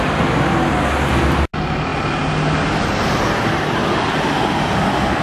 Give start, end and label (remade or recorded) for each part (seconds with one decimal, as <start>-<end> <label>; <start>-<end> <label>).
0.0-5.2 recorded

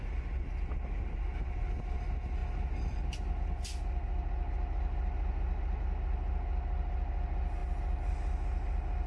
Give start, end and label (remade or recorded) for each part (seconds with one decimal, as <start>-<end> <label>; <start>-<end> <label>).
0.0-9.1 recorded